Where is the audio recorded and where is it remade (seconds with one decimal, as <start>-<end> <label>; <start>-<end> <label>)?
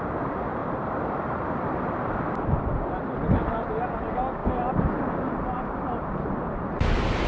0.0-0.6 recorded; 0.6-2.2 remade; 2.2-4.4 recorded; 4.4-5.2 remade; 5.2-7.3 recorded